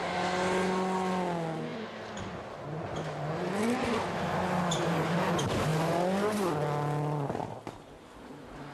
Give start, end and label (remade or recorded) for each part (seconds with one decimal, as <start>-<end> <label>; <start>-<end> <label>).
0.0-8.7 recorded